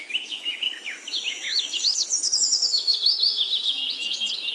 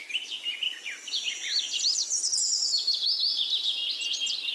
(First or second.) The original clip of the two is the second